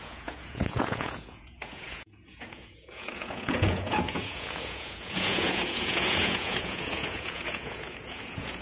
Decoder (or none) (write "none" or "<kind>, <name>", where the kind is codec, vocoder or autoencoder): vocoder, Vocos